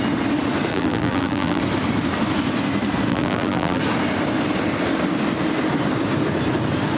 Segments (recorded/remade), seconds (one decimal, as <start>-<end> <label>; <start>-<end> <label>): 0.0-0.7 recorded; 0.7-1.6 remade; 1.6-3.1 recorded; 3.1-3.8 remade; 3.8-7.0 recorded